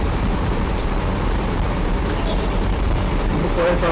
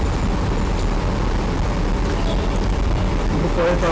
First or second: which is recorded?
second